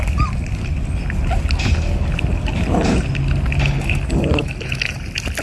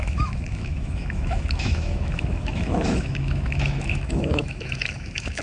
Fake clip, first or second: second